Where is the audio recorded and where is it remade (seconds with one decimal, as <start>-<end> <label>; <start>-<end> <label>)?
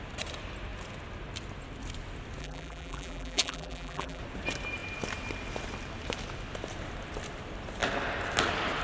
0.0-2.4 recorded; 2.4-4.2 remade; 4.2-8.8 recorded